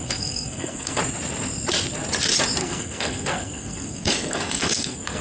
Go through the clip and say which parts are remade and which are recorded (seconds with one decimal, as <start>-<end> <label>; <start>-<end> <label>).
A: 0.0-1.0 remade; 1.0-2.6 recorded; 2.6-5.2 remade